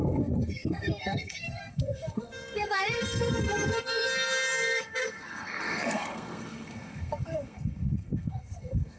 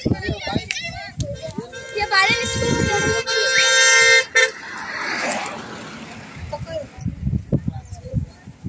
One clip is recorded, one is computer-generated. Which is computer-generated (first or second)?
first